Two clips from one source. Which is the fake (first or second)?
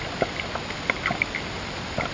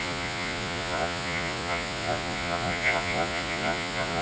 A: second